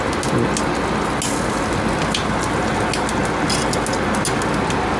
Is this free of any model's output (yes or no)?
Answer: yes